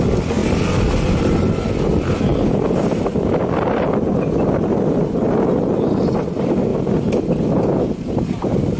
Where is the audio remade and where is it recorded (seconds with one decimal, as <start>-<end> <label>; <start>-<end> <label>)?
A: 0.0-8.8 recorded